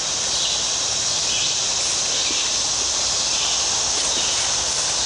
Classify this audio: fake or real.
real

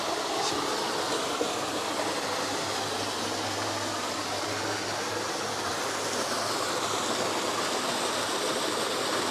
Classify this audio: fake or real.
real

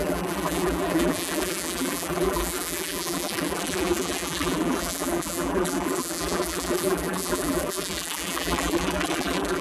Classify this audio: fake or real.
fake